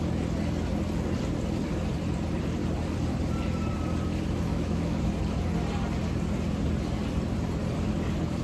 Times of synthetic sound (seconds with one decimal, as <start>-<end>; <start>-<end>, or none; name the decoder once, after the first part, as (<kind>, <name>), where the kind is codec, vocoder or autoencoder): 4.5-5.1 (autoencoder, DAC-VAE)